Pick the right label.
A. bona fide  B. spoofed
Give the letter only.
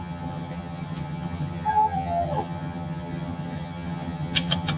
B